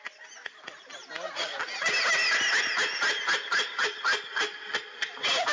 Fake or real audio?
real